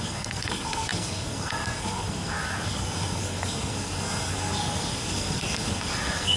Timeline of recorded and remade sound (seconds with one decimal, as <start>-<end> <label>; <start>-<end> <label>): 0.0-6.4 remade

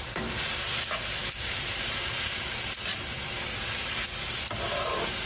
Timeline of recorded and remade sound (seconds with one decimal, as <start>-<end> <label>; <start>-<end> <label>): 0.0-5.3 recorded

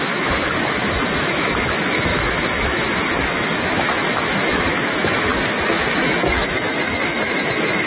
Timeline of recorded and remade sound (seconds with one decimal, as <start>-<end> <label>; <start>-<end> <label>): 0.0-5.3 remade; 5.3-5.8 recorded; 5.8-7.9 remade

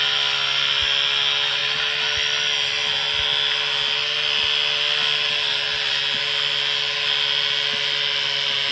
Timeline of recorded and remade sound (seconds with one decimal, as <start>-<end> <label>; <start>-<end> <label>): 0.0-8.7 recorded

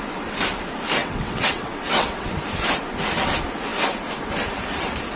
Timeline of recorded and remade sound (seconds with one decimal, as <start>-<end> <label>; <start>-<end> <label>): 0.0-1.0 recorded; 1.0-2.3 remade; 2.3-5.2 recorded

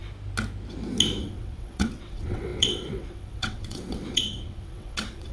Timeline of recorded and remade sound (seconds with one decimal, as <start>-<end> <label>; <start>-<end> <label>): 0.0-1.2 recorded; 1.2-5.3 remade

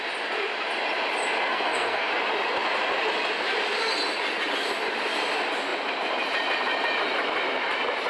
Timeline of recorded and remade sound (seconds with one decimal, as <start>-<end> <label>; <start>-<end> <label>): 0.0-1.5 recorded; 1.5-2.1 remade; 2.1-8.1 recorded

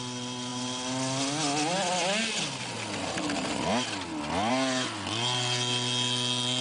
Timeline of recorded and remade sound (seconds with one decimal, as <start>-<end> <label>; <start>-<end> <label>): 0.0-6.6 recorded